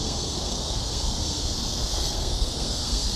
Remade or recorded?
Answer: remade